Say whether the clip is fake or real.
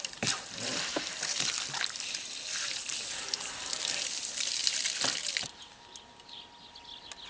real